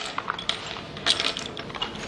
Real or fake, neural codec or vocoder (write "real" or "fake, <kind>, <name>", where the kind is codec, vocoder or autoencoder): real